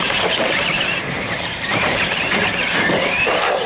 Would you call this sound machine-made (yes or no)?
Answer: yes